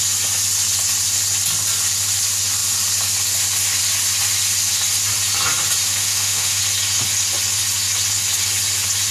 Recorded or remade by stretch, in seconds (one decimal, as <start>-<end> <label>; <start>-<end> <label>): 0.0-6.0 recorded; 6.0-6.6 remade; 6.6-9.1 recorded